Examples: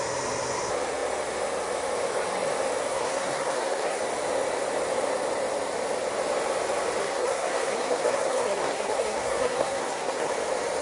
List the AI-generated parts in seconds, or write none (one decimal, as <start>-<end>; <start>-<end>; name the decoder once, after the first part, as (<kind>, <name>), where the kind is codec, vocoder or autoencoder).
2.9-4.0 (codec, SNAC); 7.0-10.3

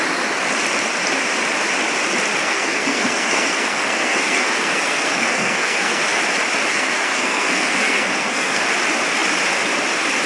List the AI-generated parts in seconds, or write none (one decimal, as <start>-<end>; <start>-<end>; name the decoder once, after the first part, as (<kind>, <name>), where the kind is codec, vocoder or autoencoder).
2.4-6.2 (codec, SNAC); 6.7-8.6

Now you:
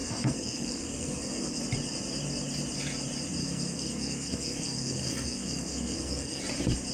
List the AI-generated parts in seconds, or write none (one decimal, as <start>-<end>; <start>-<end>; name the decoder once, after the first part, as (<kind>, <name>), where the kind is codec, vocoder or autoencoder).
0.0-1.6 (codec, SNAC); 3.4-6.4